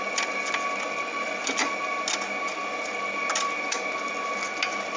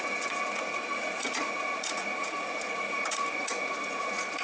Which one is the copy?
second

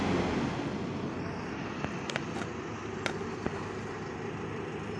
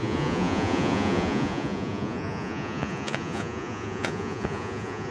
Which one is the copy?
second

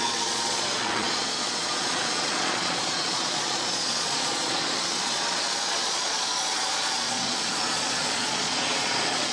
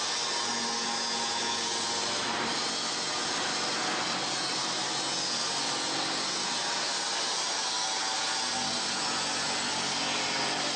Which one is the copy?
first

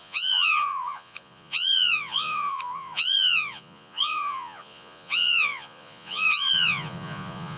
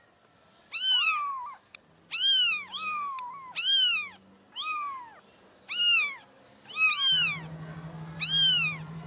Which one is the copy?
first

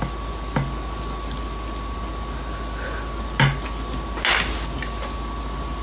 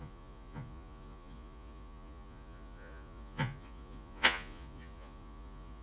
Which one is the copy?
second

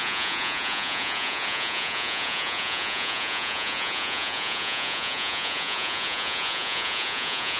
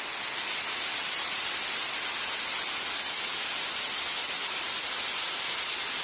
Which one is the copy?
first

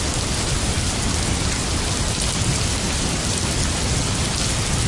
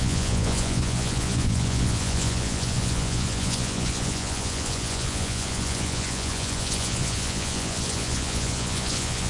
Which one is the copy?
second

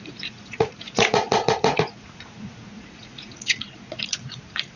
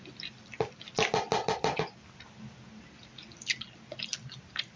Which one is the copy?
first